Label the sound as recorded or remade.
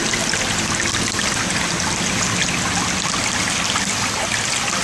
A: recorded